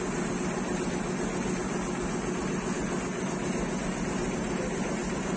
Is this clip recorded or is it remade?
recorded